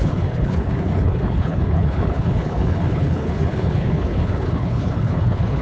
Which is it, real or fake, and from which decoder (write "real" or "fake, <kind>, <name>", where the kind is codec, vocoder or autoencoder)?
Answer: fake, codec, HILCodec